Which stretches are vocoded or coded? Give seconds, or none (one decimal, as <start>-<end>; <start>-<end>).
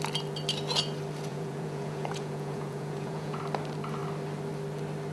1.3-3.4